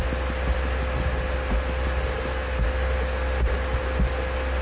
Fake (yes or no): no